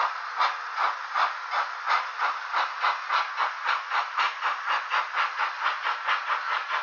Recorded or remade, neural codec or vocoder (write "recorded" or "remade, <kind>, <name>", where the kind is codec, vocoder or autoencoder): recorded